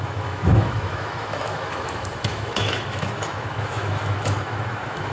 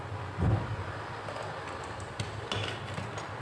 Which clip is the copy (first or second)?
first